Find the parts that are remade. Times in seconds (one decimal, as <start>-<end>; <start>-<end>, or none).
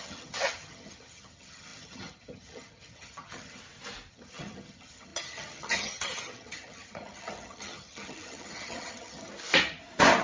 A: 0.0-3.6; 4.1-9.3